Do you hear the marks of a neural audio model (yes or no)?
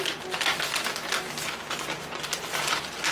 no